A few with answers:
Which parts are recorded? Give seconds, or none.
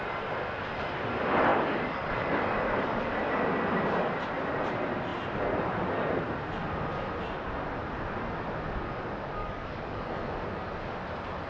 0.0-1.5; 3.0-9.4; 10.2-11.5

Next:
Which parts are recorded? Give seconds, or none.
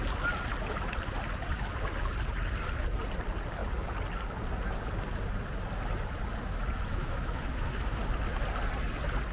0.0-6.9; 8.0-9.3